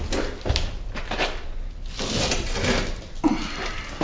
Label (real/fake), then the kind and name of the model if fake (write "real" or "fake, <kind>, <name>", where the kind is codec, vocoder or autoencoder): real